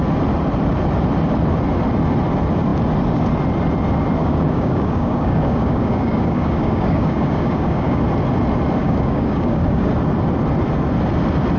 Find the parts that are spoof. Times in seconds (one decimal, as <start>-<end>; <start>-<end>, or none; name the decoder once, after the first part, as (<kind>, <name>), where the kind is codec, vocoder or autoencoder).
4.2-8.0 (codec, DAC); 8.8-9.9